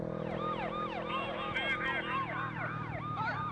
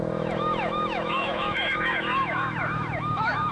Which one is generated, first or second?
second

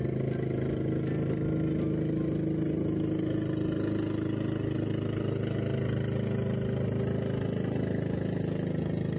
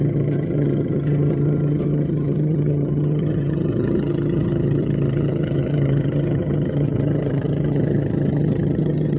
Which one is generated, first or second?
second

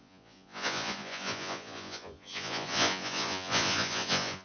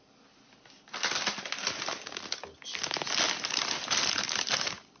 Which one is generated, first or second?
first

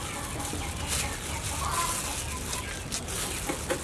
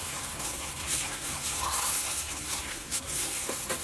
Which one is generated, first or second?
second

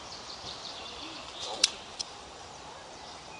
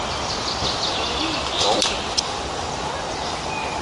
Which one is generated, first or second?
first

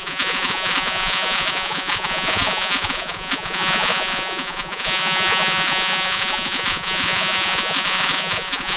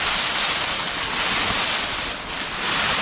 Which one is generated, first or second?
first